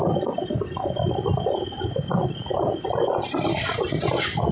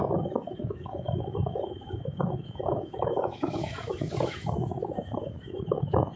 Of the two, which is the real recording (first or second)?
first